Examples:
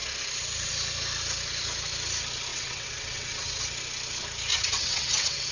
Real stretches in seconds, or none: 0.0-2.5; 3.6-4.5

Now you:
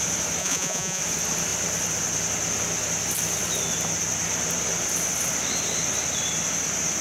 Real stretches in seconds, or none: 0.0-0.4; 1.0-7.0